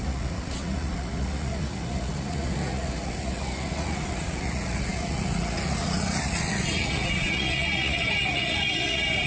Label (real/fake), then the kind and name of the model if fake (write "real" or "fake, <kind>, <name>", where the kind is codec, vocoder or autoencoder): fake, vocoder, Vocos